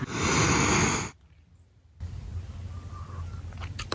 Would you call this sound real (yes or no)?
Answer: yes